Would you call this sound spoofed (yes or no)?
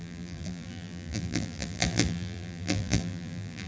yes